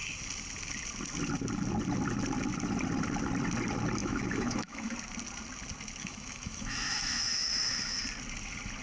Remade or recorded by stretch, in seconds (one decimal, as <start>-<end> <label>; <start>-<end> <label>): 0.0-4.0 recorded; 4.0-4.9 remade; 4.9-6.0 recorded; 6.0-8.0 remade; 8.0-8.8 recorded